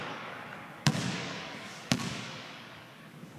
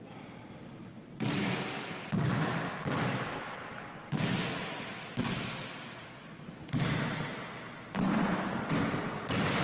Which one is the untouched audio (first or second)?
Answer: second